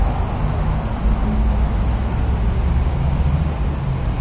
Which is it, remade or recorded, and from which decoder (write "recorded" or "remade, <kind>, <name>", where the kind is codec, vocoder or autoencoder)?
recorded